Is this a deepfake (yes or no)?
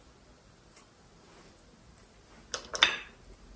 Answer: no